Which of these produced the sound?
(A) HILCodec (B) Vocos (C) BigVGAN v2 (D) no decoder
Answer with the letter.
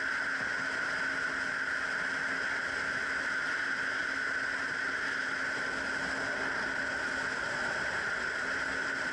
D